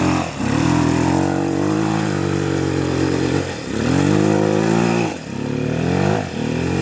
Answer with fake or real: fake